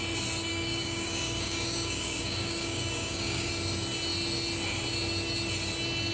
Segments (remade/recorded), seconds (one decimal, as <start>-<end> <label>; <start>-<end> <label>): 0.0-0.5 recorded; 0.5-3.5 remade; 3.5-6.1 recorded